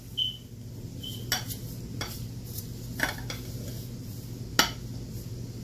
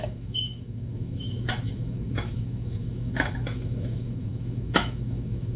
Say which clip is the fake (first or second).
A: second